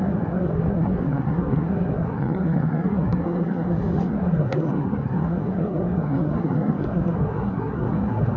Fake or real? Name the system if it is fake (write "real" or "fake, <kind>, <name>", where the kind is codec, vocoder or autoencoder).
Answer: fake, codec, SNAC